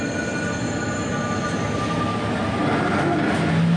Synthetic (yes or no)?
no